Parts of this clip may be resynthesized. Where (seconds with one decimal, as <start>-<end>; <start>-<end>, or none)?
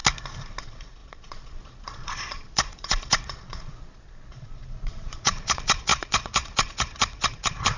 0.6-7.8